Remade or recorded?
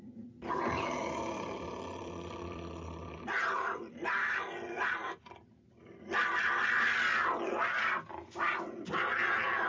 remade